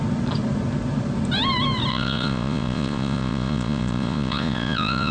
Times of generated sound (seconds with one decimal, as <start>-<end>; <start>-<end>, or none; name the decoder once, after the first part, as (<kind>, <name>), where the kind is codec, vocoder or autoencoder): 1.9-5.1 (vocoder, Vocos)